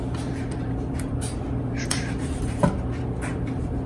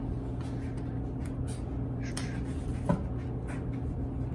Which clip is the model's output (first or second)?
first